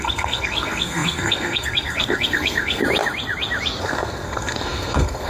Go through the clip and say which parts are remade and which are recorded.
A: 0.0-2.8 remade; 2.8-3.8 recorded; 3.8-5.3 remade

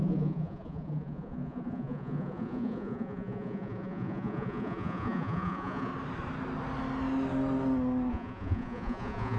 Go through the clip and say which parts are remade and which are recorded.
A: 0.0-5.9 remade; 5.9-8.1 recorded; 8.1-9.4 remade

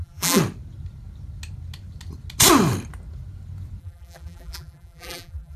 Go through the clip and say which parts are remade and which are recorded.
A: 0.0-0.4 remade; 0.4-3.8 recorded; 3.8-5.6 remade

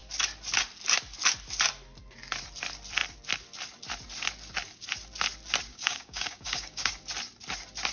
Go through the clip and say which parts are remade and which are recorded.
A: 0.0-5.7 recorded; 5.7-6.9 remade; 6.9-7.9 recorded

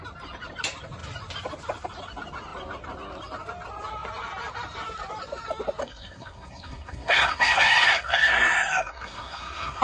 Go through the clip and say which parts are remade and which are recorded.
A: 0.0-5.8 recorded; 5.8-9.8 remade

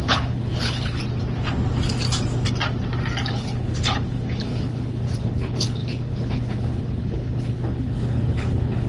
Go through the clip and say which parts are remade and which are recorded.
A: 0.0-1.0 remade; 1.0-3.3 recorded; 3.3-8.9 remade

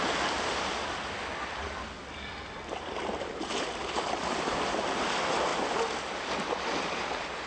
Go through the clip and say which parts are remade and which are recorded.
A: 0.0-7.5 recorded

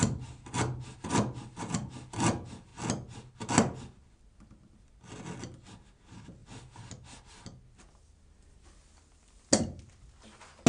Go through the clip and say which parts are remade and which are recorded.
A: 0.0-10.7 recorded